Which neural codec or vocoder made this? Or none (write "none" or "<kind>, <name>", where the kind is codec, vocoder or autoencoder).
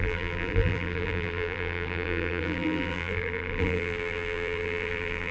vocoder, BigVGAN v2